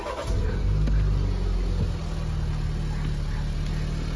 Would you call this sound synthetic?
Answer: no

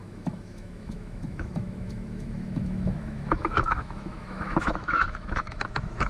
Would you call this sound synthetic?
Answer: yes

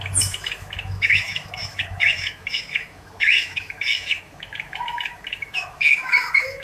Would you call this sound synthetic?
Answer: yes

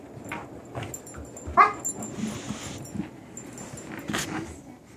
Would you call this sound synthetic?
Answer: no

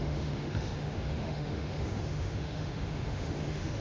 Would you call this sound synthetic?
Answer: yes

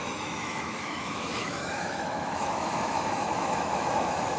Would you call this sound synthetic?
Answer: yes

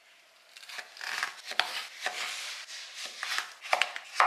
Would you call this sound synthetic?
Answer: no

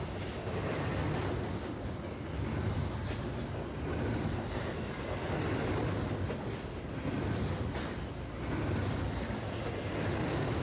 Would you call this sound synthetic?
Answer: no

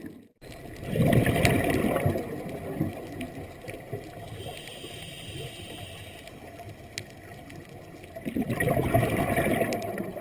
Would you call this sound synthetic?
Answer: no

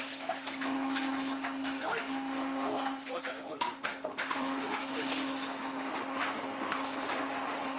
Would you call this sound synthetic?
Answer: yes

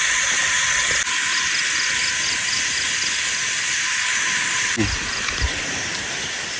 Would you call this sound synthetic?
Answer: no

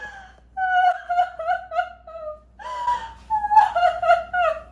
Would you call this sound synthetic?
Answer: no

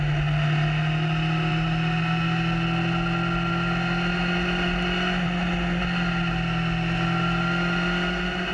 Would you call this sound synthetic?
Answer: no